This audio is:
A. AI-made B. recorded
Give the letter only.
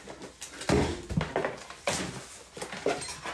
B